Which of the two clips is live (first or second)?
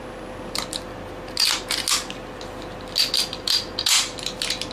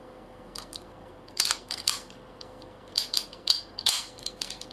first